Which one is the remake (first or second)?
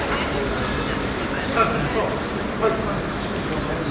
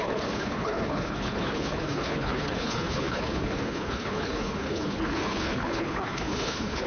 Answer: second